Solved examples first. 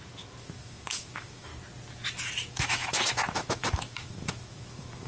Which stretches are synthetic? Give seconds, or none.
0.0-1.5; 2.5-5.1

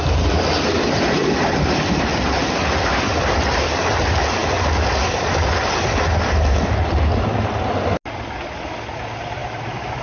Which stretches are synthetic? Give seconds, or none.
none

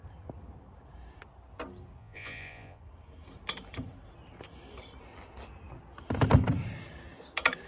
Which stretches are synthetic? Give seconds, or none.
2.0-2.8